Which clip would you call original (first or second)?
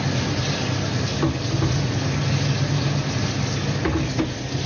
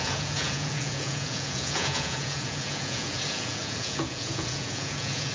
first